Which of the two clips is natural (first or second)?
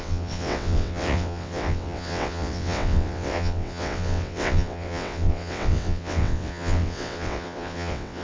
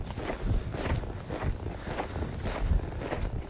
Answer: second